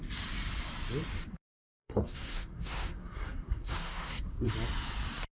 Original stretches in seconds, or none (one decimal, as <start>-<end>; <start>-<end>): 0.0-1.3; 4.5-5.3